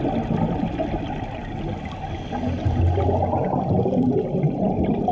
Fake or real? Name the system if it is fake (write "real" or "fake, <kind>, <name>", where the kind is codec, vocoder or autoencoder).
real